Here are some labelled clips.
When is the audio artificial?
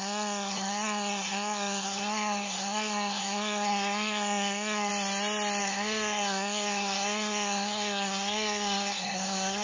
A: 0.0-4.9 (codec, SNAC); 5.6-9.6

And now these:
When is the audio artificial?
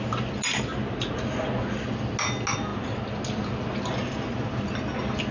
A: none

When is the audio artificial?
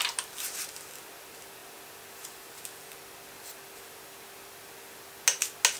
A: none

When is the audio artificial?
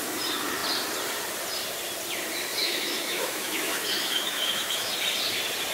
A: 2.6-4.9 (autoencoder, DAC-VAE)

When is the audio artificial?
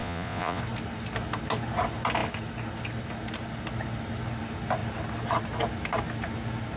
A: 0.0-0.6 (vocoder, Vocos)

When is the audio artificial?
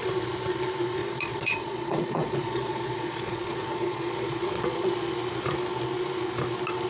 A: 1.0-5.1 (vocoder, Vocos)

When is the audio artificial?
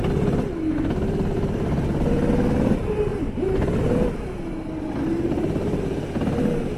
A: none